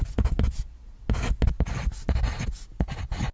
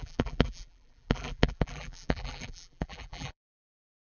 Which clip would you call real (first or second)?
first